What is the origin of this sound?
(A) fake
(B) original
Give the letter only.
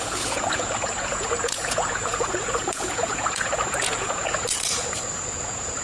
A